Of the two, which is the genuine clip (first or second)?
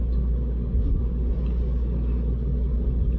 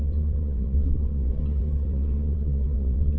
first